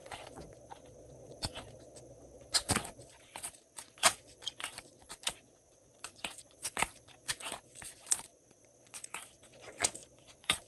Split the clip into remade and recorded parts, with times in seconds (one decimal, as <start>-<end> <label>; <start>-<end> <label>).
0.0-10.7 remade